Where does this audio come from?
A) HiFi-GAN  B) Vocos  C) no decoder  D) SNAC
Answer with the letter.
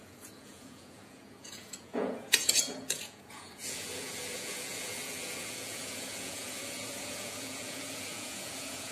B